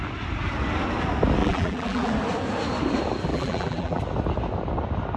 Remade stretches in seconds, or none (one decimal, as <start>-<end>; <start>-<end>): 1.4-2.1; 3.3-4.0